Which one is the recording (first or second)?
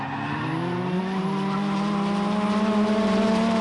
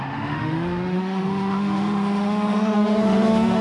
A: first